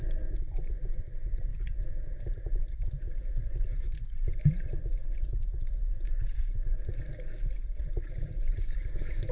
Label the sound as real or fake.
fake